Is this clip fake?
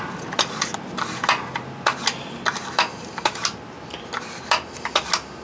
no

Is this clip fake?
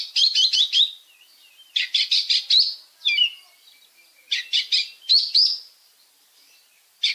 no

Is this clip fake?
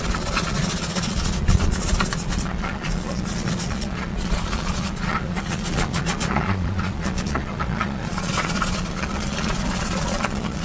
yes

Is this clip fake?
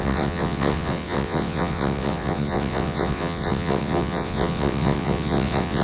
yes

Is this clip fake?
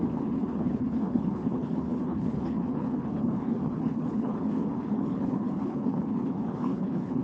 yes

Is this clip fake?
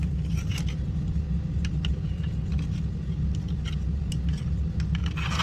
no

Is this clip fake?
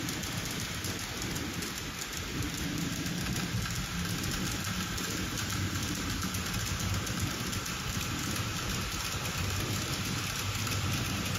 no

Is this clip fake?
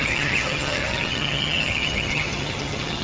yes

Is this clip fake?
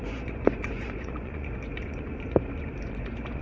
yes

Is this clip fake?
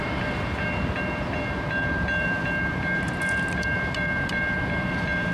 yes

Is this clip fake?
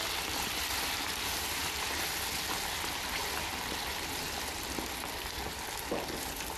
yes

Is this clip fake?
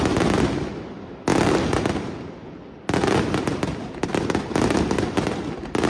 no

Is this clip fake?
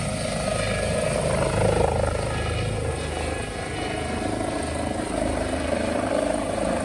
no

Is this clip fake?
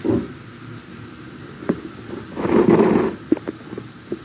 no